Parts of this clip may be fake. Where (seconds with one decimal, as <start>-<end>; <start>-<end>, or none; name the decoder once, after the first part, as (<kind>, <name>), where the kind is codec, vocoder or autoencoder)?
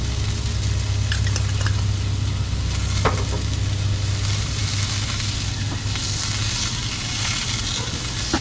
none